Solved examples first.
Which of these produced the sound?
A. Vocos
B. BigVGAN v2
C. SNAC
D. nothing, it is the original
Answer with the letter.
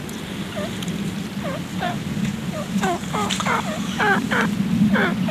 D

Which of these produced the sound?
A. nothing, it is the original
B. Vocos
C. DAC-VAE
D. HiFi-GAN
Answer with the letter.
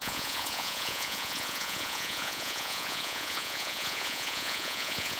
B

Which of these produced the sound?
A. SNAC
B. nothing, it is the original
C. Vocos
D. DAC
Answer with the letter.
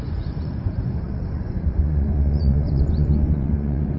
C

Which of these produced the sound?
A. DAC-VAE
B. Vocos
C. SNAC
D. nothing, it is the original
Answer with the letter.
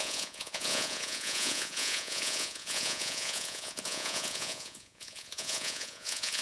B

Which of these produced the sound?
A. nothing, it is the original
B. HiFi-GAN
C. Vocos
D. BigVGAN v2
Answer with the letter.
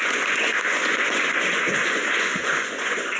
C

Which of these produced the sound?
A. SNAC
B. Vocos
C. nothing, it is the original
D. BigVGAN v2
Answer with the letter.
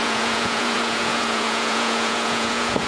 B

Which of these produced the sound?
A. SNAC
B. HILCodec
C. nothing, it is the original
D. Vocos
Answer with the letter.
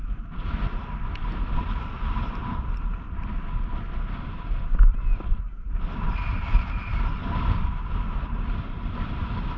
C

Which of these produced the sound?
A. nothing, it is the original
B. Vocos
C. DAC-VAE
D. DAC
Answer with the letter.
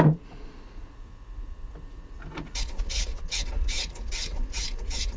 B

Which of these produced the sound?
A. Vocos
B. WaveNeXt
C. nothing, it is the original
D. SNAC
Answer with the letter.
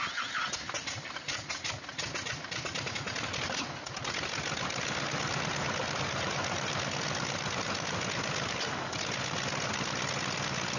C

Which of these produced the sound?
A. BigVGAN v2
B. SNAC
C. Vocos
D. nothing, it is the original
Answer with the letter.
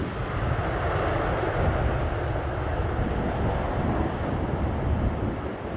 D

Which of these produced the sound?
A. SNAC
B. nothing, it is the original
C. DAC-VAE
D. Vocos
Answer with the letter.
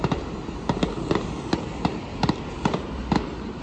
B